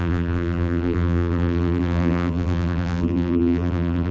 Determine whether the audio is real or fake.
fake